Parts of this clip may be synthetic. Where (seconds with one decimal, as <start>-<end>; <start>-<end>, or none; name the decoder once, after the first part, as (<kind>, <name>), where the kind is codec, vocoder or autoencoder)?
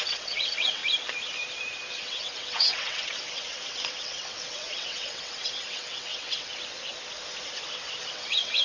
0.0-0.8 (vocoder, WaveNeXt); 1.9-6.5; 8.1-8.6